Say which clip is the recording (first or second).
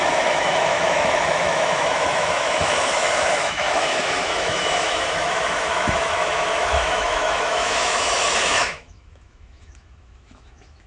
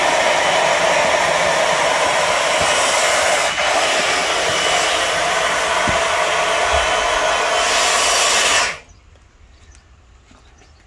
second